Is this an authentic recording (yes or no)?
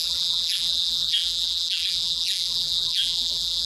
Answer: no